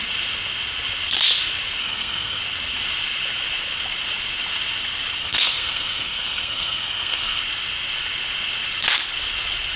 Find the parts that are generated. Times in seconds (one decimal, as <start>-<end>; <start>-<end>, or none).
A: 1.8-2.4; 5.2-7.4